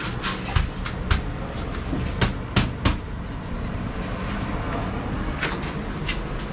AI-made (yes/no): no